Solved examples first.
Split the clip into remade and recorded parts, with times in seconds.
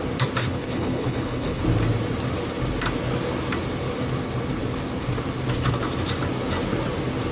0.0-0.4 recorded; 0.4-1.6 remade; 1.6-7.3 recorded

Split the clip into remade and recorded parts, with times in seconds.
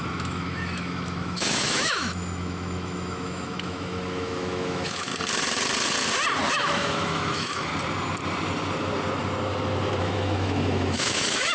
0.0-5.1 remade; 5.1-6.5 recorded; 6.5-7.7 remade; 7.7-10.0 recorded; 10.0-11.5 remade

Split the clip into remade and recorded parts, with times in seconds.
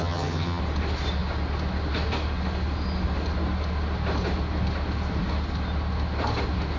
0.0-0.6 remade; 0.6-6.8 recorded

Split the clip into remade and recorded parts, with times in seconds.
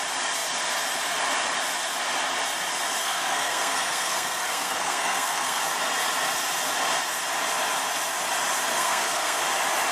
0.0-3.0 recorded; 3.0-5.6 remade; 5.6-8.7 recorded; 8.7-9.4 remade; 9.4-9.9 recorded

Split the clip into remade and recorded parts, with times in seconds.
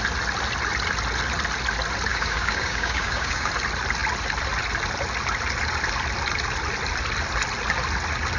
0.0-2.1 recorded; 2.1-3.5 remade; 3.5-8.4 recorded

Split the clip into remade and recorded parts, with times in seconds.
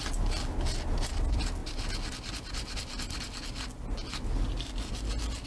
0.0-5.5 recorded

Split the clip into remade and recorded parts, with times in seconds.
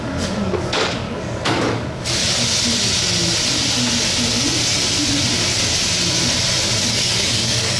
0.0-2.2 remade; 2.2-6.8 recorded; 6.8-7.8 remade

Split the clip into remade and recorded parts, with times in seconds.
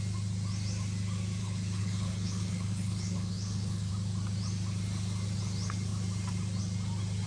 0.0-1.4 recorded; 1.4-3.9 remade; 3.9-7.3 recorded